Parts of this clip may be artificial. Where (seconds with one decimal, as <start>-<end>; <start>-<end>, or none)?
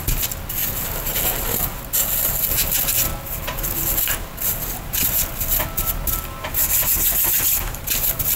none